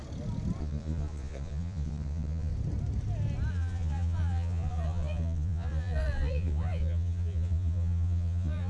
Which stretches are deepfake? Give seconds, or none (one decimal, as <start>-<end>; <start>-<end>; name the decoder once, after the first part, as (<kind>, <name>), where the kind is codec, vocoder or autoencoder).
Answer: 0.6-2.5 (vocoder, Vocos); 3.5-8.7